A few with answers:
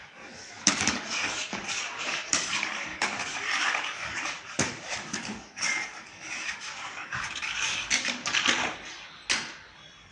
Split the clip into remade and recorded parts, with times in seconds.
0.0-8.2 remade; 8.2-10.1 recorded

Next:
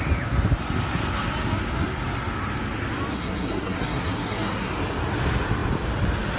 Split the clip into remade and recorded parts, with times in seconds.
0.0-3.1 recorded; 3.1-4.7 remade; 4.7-6.4 recorded

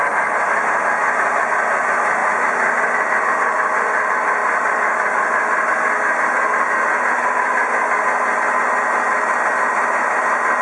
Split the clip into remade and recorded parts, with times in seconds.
0.0-10.6 recorded

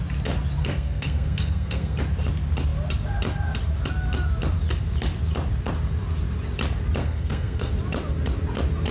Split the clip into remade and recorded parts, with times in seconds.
0.0-0.6 recorded; 0.6-2.0 remade; 2.0-7.0 recorded; 7.0-7.7 remade; 7.7-8.9 recorded

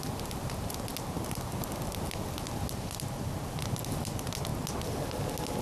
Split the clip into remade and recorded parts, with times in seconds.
0.0-5.6 recorded

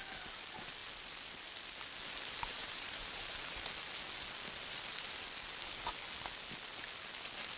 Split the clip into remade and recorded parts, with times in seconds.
0.0-2.6 recorded; 2.6-3.6 remade; 3.6-7.6 recorded

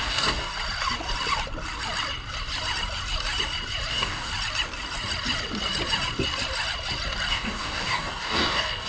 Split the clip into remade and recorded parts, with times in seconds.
0.0-0.5 remade; 0.5-3.9 recorded; 3.9-4.3 remade; 4.3-7.3 recorded; 7.3-8.9 remade